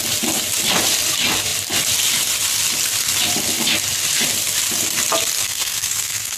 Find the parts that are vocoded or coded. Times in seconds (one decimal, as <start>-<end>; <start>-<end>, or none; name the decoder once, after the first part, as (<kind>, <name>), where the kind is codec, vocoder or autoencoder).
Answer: 5.4-6.4 (codec, SNAC)